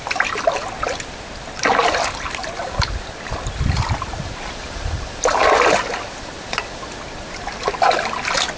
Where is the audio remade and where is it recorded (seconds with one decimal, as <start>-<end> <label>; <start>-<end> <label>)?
0.0-8.6 recorded